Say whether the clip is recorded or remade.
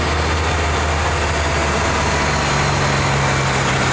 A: recorded